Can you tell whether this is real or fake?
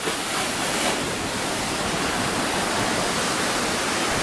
real